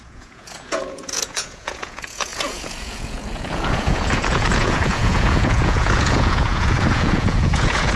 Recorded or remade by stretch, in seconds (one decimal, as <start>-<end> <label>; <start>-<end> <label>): 0.0-8.0 remade

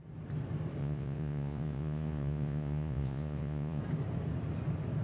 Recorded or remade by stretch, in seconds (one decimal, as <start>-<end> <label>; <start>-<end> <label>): 0.0-0.8 recorded; 0.8-3.8 remade; 3.8-5.0 recorded

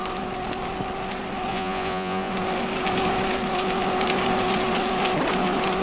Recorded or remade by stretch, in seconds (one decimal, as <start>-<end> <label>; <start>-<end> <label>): 0.0-1.5 recorded; 1.5-2.3 remade; 2.3-5.8 recorded

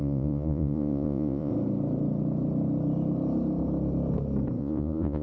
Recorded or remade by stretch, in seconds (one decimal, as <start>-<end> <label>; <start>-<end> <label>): 0.0-1.5 remade; 1.5-4.6 recorded; 4.6-5.2 remade

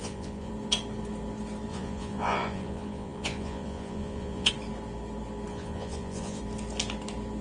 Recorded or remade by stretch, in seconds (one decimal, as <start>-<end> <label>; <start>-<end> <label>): 0.0-0.5 remade; 0.5-1.7 recorded; 1.7-4.5 remade; 4.5-5.5 recorded; 5.5-6.4 remade; 6.4-7.4 recorded

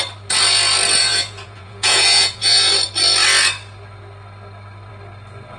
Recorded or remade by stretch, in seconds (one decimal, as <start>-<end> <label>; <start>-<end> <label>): 0.0-1.0 recorded; 1.0-2.7 remade; 2.7-5.6 recorded